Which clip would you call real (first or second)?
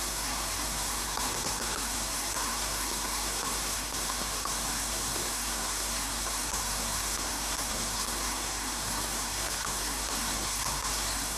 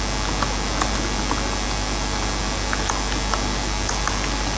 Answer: second